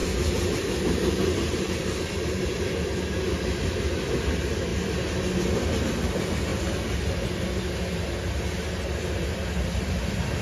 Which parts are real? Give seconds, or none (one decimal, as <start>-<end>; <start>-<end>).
2.5-10.4